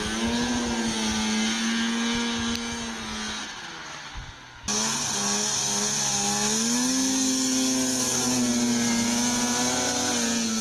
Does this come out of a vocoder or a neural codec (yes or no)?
no